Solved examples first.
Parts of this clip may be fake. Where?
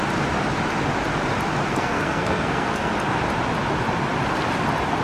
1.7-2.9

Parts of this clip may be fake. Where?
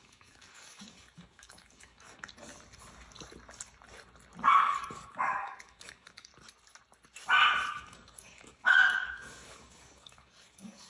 0.0-2.5; 4.5-6.3; 7.7-10.9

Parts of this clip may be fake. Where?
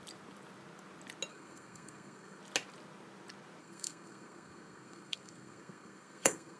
1.3-2.4; 3.6-6.6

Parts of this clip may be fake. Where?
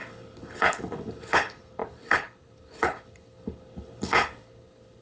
0.0-5.0